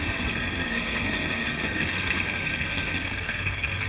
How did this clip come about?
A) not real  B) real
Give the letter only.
A